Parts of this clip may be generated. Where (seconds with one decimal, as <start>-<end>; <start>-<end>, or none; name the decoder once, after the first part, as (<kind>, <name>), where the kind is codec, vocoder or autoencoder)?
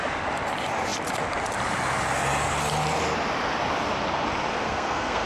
4.5-5.3 (codec, SNAC)